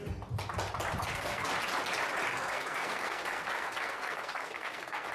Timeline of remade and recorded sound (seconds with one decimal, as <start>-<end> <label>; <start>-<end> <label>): 0.0-1.0 recorded; 1.0-1.5 remade; 1.5-2.3 recorded; 2.3-5.1 remade